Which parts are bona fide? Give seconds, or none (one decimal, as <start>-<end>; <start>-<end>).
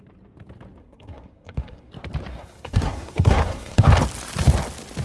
0.0-0.8; 1.9-2.3; 3.9-5.0